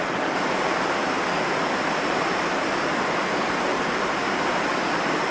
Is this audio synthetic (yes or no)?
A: no